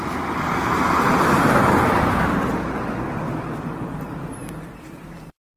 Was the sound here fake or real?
real